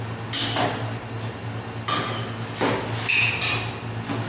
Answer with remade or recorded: recorded